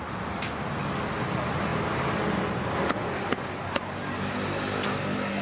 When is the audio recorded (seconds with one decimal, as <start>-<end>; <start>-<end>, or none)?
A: 0.0-5.4